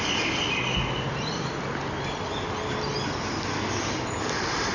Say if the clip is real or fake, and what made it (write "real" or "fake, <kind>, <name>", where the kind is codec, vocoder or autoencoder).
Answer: real